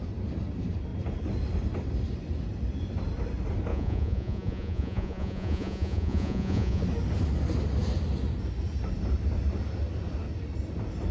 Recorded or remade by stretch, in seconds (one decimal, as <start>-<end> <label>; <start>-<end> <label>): 0.0-3.7 recorded; 3.7-6.8 remade; 6.8-11.1 recorded